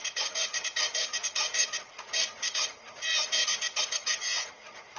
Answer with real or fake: fake